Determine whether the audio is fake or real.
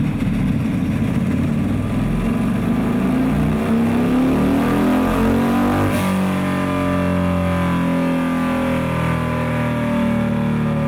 real